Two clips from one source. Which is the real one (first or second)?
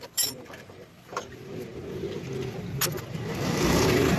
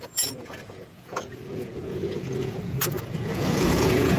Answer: first